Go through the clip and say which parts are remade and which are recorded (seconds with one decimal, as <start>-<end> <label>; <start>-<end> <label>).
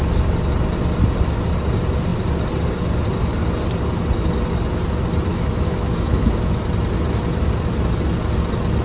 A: 0.0-5.3 recorded; 5.3-6.6 remade; 6.6-8.8 recorded